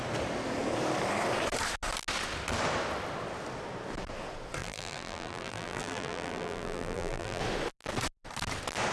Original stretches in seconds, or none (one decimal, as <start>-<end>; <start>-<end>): 0.0-4.6; 7.4-8.9